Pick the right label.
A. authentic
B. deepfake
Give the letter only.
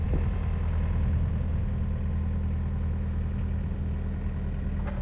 A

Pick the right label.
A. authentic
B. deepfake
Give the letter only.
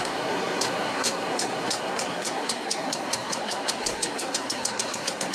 B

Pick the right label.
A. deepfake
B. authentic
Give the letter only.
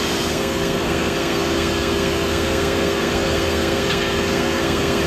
A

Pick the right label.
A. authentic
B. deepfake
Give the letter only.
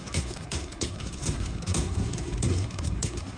B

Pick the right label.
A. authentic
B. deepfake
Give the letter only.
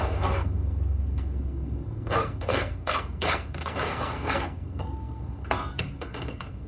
B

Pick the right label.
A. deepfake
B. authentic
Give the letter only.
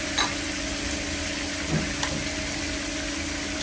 B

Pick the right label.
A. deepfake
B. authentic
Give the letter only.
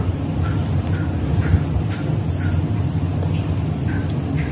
B